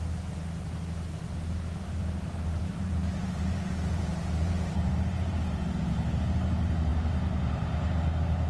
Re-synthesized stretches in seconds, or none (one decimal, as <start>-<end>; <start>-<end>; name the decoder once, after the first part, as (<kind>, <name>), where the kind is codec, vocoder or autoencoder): 2.0-5.8 (vocoder, BigVGAN v2)